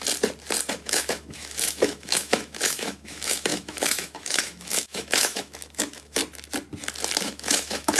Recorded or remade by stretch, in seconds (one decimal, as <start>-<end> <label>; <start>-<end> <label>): 0.0-0.7 recorded; 0.7-6.2 remade; 6.2-7.2 recorded; 7.2-8.0 remade